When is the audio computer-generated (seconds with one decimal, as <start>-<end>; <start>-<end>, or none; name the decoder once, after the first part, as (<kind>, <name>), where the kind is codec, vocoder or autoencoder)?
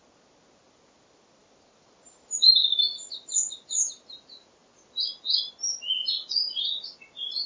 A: none